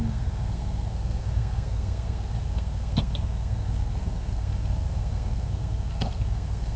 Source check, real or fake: fake